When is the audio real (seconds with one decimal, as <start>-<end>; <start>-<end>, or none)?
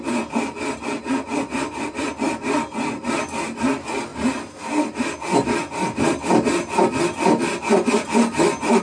0.0-8.8